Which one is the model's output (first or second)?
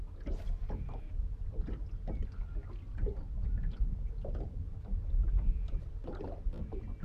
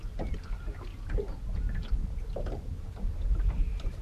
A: second